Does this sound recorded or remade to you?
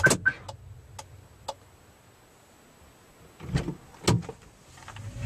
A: recorded